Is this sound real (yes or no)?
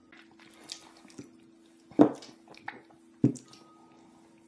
yes